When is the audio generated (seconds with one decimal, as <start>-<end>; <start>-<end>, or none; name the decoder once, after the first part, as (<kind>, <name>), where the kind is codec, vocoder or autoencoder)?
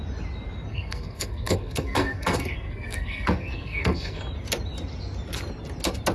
0.7-4.2 (codec, SNAC)